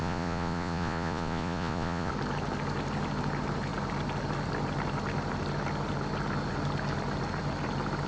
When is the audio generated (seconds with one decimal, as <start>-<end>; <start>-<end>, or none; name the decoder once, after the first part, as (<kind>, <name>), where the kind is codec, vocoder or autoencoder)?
0.0-2.1 (vocoder, Vocos)